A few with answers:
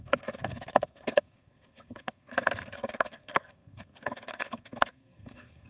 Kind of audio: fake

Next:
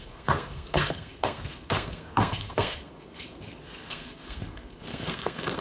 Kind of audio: fake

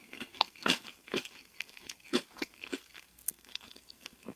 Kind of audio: fake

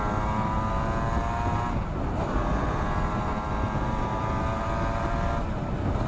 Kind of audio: real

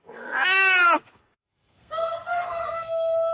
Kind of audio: fake